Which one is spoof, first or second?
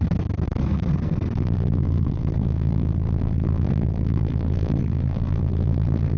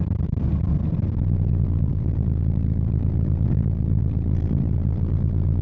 first